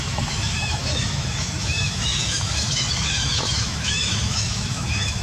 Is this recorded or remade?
remade